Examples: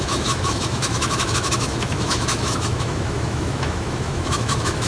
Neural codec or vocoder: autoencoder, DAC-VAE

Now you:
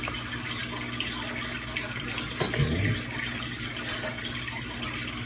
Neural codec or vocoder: none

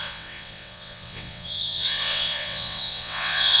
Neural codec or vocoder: vocoder, WaveNeXt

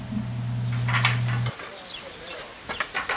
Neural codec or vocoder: none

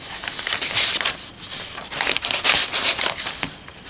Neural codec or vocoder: none